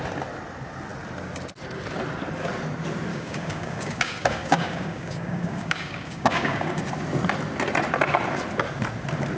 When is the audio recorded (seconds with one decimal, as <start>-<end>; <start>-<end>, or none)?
0.0-3.1; 6.8-9.4